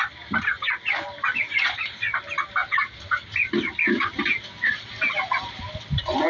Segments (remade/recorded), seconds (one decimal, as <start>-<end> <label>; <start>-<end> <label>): 0.0-6.3 recorded